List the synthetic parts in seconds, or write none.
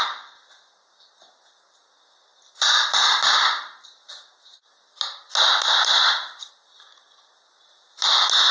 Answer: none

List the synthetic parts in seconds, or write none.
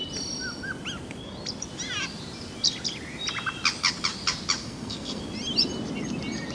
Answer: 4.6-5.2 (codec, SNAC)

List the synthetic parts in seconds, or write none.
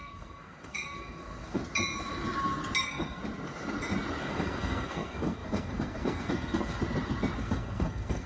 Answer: 0.0-1.6 (codec, SNAC); 2.8-3.2; 4.2-6.8; 7.4-8.3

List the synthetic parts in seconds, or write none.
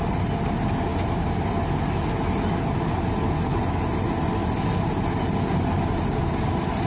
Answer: none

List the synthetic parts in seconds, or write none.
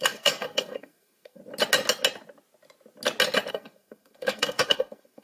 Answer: 0.0-1.4 (codec, SNAC); 3.5-5.2